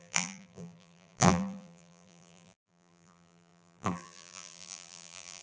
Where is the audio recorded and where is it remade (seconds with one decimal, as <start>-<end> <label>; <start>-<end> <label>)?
0.0-5.4 remade

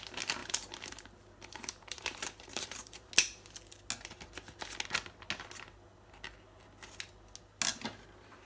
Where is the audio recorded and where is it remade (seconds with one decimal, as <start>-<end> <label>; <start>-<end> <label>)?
0.0-0.4 recorded; 0.4-3.1 remade; 3.1-8.5 recorded

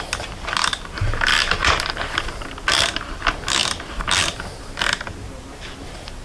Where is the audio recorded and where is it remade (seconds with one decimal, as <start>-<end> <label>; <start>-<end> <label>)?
0.0-1.3 recorded; 1.3-1.9 remade; 1.9-6.2 recorded

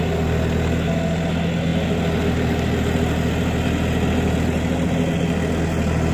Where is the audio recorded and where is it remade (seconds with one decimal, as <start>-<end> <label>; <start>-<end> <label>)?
0.0-6.1 recorded

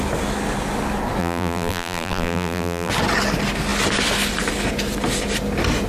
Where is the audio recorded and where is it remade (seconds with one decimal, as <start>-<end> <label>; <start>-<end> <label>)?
0.0-1.2 recorded; 1.2-2.9 remade; 2.9-5.9 recorded